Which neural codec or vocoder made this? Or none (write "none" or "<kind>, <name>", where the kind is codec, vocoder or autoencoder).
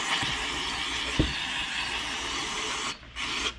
none